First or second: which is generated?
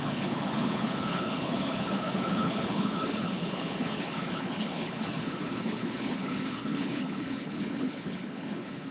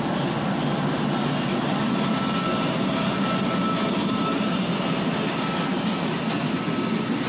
first